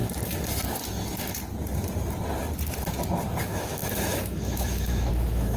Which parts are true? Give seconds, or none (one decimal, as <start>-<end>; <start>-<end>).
0.0-3.4